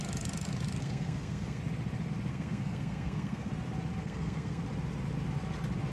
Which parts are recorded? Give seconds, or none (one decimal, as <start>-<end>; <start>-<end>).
0.0-0.8; 1.6-2.3; 3.5-4.0; 4.6-5.9